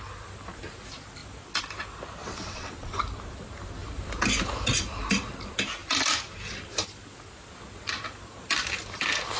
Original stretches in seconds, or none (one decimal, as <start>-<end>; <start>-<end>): 0.0-2.2; 3.0-9.4